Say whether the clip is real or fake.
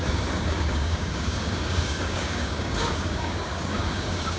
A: fake